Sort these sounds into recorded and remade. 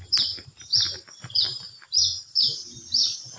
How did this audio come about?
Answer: remade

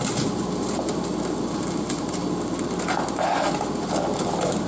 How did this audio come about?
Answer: recorded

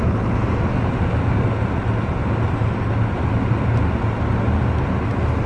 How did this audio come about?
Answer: recorded